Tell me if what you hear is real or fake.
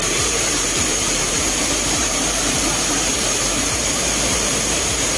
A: fake